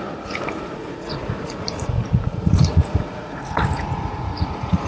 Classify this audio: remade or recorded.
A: remade